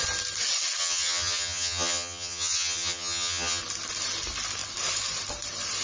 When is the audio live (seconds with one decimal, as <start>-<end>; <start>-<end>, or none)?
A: 0.0-0.8; 3.6-5.8